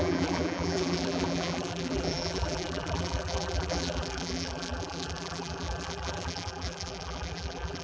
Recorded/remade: remade